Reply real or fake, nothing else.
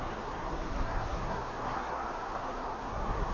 fake